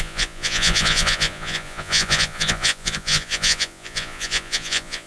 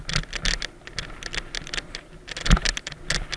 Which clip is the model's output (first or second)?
first